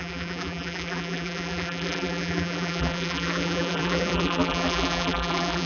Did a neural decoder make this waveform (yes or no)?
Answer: yes